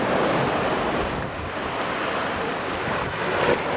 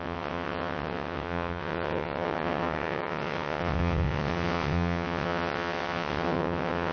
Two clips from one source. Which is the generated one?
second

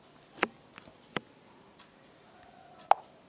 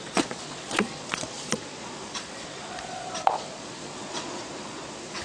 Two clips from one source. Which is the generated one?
second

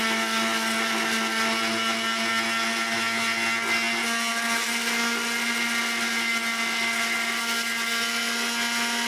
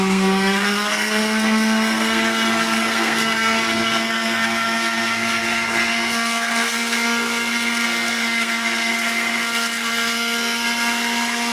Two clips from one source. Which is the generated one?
second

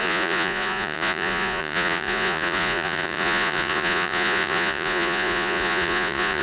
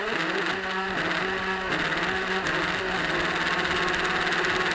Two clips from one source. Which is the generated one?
first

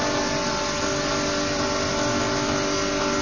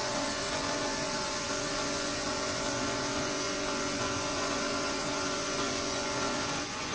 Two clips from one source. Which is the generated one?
second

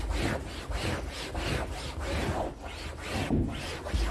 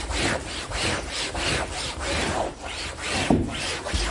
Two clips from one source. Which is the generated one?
second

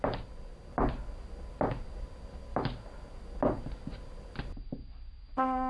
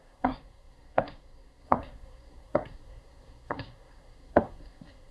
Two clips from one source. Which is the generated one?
second